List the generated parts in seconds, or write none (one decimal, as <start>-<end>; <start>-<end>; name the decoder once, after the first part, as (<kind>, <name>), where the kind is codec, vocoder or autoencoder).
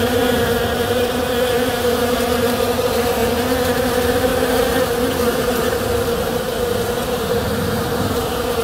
0.0-3.2 (vocoder, BigVGAN v2); 3.7-4.3; 5.1-6.5; 7.2-8.6